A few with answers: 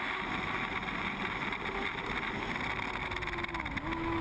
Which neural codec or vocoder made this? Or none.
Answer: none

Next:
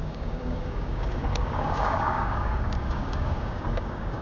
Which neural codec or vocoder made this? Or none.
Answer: codec, DAC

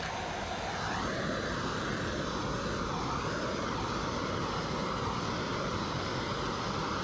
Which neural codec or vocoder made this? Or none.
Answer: none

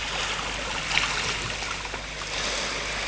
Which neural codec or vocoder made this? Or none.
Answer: none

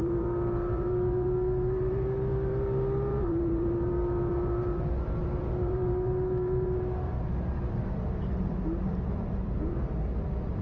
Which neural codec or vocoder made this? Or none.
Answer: vocoder, BigVGAN v2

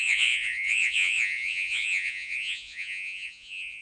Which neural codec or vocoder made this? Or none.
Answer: vocoder, Vocos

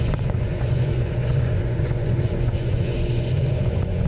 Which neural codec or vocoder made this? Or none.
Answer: vocoder, Vocos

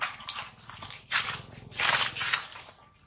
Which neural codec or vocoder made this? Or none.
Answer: none